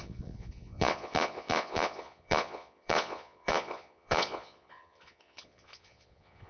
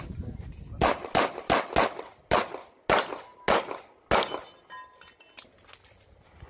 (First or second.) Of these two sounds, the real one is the second